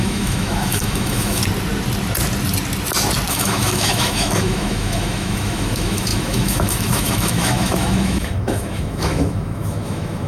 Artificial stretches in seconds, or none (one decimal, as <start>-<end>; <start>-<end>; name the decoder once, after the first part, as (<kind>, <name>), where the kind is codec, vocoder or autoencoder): 0.0-1.4 (autoencoder, DAC-VAE); 3.3-10.3